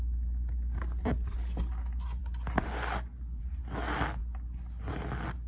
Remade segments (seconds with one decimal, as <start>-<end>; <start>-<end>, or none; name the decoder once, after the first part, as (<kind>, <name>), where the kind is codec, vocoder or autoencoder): none